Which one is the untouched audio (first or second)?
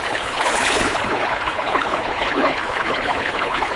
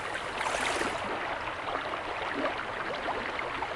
second